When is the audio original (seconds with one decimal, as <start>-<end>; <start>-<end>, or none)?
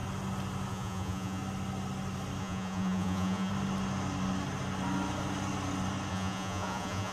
0.0-0.7; 1.4-2.4; 3.5-6.1